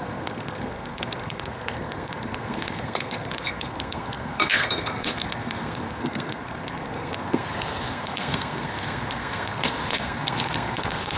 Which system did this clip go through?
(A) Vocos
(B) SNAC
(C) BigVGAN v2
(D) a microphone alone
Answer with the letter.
B